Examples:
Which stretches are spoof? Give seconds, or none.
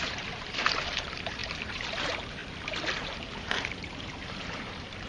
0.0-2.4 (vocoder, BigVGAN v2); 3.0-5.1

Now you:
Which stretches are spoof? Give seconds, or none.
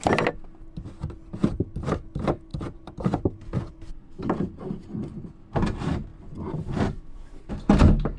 1.4-2.0 (vocoder, BigVGAN v2); 2.5-4.2; 6.1-7.4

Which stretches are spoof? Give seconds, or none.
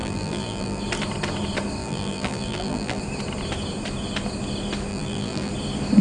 0.0-0.8 (vocoder, BigVGAN v2); 1.8-3.0; 4.9-5.5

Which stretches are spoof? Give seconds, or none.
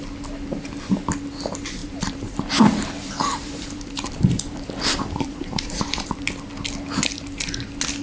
1.8-6.1 (vocoder, BigVGAN v2)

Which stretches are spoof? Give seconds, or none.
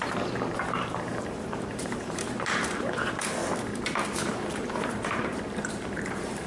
0.0-3.4 (vocoder, BigVGAN v2); 4.2-6.5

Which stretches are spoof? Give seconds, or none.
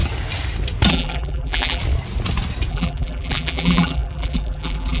0.9-1.8 (vocoder, BigVGAN v2); 2.7-5.0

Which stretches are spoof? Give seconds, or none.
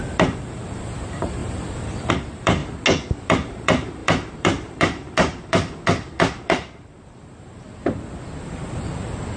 0.0-2.6 (vocoder, BigVGAN v2); 3.2-7.8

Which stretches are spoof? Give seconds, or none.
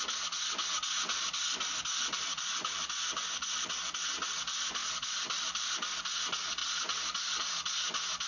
1.9-3.7 (vocoder, BigVGAN v2); 4.8-6.0; 6.6-7.4